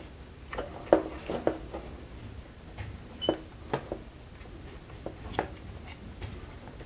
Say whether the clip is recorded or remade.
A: recorded